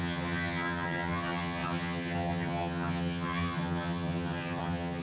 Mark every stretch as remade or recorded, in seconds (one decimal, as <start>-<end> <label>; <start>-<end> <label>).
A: 0.0-5.0 remade